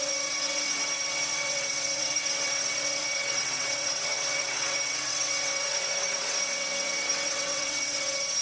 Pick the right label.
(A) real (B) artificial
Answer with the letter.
B